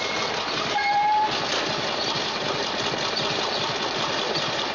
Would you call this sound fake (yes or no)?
no